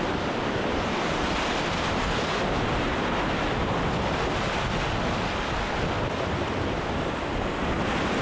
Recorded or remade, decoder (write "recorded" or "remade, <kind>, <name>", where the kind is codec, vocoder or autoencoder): recorded